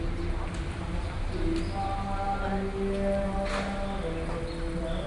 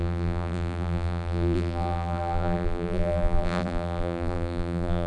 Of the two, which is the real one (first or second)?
first